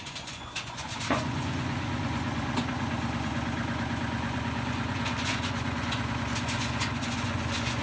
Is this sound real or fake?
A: fake